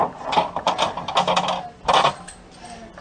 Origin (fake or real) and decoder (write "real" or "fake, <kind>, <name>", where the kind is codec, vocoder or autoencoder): real